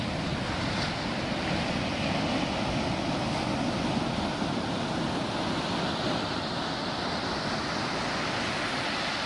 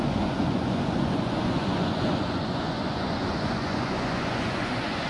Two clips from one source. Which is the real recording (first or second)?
first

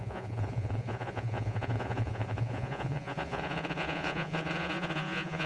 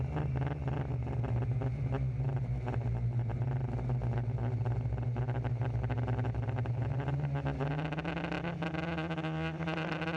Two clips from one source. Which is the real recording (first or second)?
second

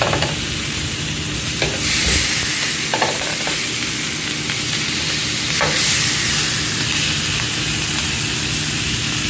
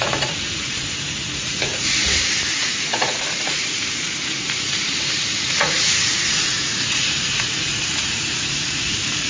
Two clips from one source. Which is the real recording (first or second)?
first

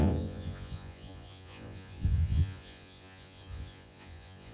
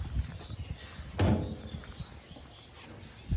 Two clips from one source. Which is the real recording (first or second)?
second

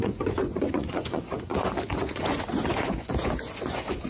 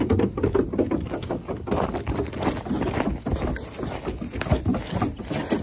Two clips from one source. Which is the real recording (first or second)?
second